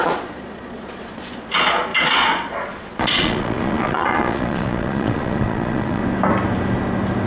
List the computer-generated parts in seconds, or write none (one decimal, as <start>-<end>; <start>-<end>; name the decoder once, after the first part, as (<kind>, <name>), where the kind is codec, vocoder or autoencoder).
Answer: 0.0-6.0 (vocoder, Vocos)